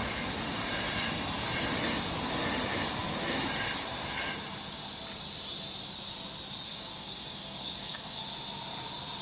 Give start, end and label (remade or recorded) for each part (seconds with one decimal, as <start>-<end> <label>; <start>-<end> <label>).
0.0-6.7 recorded; 6.7-8.2 remade; 8.2-9.2 recorded

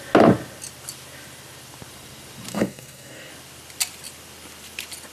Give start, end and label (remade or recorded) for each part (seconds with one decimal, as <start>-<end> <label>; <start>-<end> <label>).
0.0-2.5 recorded; 2.5-3.3 remade; 3.3-5.1 recorded

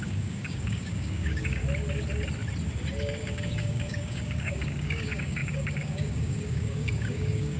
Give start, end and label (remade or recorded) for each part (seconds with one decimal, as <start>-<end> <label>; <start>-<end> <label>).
0.0-1.6 remade; 1.6-3.0 recorded; 3.0-7.6 remade